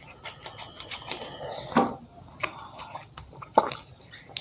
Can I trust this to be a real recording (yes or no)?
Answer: yes